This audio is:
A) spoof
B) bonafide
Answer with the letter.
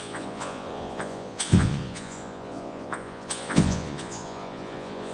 A